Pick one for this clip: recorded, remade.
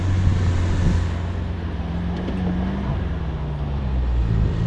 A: recorded